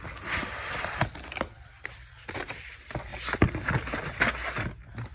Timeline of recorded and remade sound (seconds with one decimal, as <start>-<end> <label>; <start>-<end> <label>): 0.0-3.1 remade; 3.1-4.6 recorded; 4.6-5.1 remade